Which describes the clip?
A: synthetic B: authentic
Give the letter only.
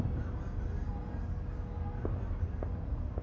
B